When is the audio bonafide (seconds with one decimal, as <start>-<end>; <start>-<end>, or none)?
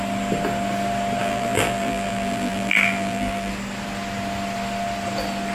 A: 0.0-1.2; 3.5-5.5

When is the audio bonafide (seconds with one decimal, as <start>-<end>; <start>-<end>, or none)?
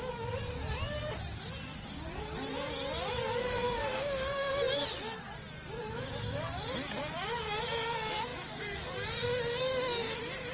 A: 0.0-3.4; 4.5-10.5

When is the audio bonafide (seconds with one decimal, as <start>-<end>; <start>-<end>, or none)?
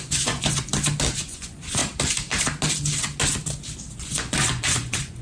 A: 0.7-1.2; 1.8-4.0